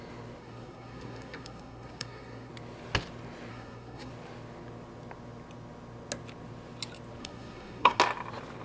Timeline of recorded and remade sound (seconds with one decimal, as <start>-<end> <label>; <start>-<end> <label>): 0.0-0.4 recorded; 0.4-2.5 remade; 2.5-3.5 recorded; 3.5-4.1 remade; 4.1-7.2 recorded; 7.2-8.0 remade; 8.0-8.6 recorded